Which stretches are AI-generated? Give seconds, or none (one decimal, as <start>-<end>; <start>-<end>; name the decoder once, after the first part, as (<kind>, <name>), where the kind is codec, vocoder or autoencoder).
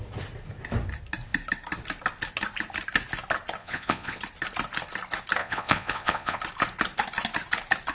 3.6-4.2 (vocoder, Vocos); 5.4-6.4